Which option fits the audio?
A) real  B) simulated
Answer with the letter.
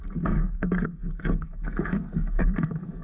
B